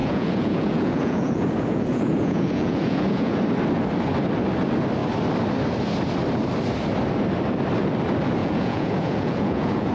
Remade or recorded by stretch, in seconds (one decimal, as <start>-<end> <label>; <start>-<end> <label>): 0.0-3.4 remade; 3.4-8.4 recorded; 8.4-9.9 remade